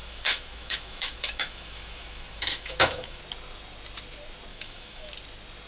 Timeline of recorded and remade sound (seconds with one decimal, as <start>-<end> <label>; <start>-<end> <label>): 0.0-3.2 remade; 3.2-4.5 recorded; 4.5-5.1 remade; 5.1-5.7 recorded